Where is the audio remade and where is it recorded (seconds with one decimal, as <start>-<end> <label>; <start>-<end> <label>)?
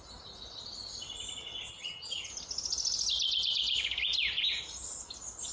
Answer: 0.0-1.7 recorded; 1.7-2.3 remade; 2.3-5.5 recorded